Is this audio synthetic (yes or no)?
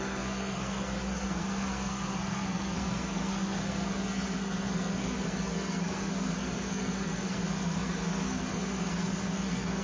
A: yes